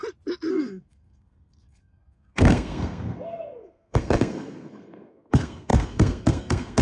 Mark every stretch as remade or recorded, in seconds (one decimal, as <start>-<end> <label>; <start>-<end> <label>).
0.0-0.5 recorded; 0.5-6.8 remade